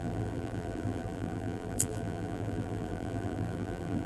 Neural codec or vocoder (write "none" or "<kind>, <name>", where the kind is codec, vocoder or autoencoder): vocoder, BigVGAN v2